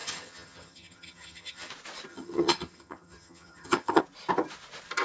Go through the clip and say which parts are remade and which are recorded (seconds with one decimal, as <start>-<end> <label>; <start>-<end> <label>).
0.0-1.7 remade; 1.7-2.1 recorded; 2.1-4.0 remade; 4.0-5.0 recorded